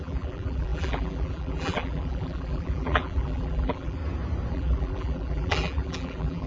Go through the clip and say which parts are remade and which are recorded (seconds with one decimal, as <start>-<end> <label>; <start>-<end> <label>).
0.0-4.0 remade; 4.0-4.5 recorded; 4.5-6.5 remade